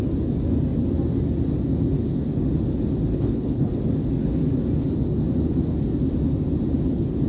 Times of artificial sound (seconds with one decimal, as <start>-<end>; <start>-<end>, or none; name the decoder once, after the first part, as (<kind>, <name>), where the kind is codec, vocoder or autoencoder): 3.1-3.7 (codec, HILCodec)